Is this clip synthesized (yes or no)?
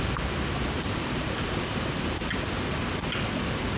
no